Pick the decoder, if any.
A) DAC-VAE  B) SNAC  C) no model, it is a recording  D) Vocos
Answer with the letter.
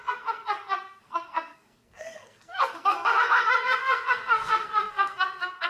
B